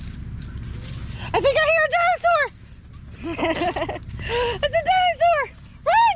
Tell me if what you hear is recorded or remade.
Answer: recorded